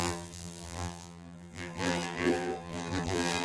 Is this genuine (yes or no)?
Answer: no